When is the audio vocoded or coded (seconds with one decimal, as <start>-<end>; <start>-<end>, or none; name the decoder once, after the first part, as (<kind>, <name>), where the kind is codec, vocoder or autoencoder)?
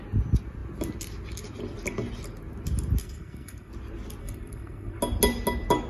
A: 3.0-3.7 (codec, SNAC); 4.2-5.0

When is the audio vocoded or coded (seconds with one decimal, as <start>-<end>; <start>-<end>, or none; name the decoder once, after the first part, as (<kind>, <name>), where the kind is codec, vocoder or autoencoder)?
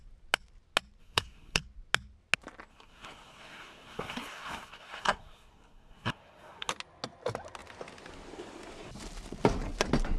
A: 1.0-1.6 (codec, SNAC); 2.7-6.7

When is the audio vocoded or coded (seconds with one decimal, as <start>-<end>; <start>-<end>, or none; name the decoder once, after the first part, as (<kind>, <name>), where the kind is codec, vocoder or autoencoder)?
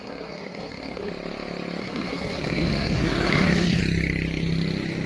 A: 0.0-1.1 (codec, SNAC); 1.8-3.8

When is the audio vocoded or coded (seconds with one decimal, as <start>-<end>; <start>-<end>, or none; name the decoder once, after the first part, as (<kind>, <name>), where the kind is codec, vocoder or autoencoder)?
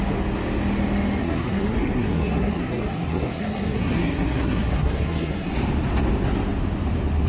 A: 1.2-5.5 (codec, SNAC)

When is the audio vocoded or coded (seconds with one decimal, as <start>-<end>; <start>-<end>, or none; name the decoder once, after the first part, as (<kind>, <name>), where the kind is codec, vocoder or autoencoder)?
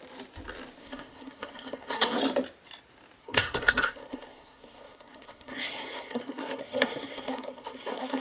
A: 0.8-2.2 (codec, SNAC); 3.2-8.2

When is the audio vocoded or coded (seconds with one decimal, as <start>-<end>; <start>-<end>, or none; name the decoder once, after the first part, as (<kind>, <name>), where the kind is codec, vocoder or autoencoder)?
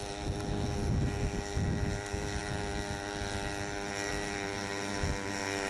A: none